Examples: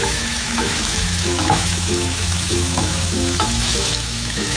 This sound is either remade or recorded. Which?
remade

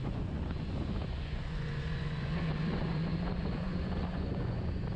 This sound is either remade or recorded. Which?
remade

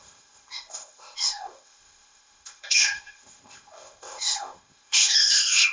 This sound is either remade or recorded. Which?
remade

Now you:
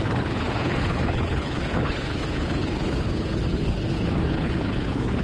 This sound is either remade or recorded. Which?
remade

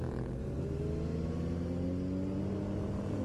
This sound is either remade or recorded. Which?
recorded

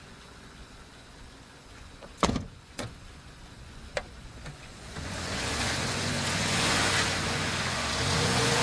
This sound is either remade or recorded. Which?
remade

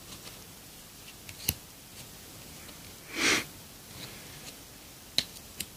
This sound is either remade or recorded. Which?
recorded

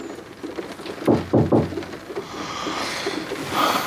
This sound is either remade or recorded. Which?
recorded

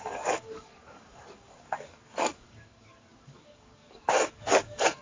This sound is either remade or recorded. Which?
remade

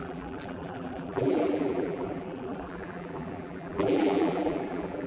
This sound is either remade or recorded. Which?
remade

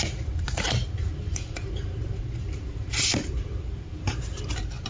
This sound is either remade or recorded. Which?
remade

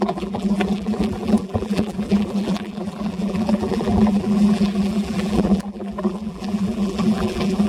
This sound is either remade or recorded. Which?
remade